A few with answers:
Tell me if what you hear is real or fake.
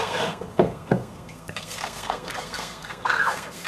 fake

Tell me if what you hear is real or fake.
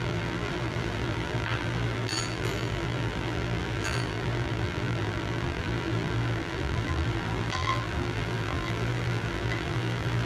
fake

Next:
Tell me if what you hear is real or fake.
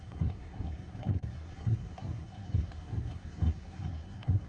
fake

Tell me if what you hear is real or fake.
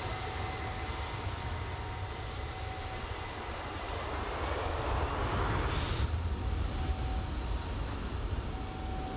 real